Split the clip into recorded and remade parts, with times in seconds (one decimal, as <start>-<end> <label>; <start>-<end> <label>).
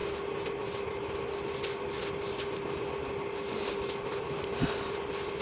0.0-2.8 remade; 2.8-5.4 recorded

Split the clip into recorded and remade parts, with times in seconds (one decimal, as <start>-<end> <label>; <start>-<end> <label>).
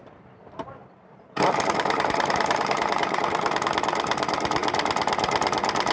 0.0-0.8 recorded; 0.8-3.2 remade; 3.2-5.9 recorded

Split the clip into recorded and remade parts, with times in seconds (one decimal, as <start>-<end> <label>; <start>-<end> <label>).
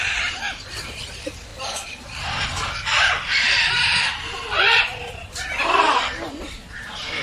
0.0-1.5 recorded; 1.5-2.4 remade; 2.4-2.9 recorded; 2.9-7.2 remade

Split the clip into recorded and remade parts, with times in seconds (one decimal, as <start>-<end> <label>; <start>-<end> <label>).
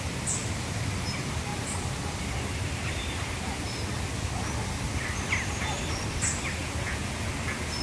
0.0-6.6 recorded; 6.6-7.3 remade; 7.3-7.8 recorded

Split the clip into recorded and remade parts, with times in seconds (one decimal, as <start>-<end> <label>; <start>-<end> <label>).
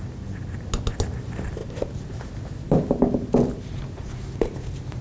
0.0-5.0 recorded